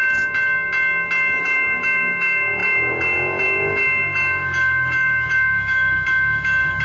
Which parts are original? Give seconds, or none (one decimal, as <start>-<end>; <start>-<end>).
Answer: 0.0-1.4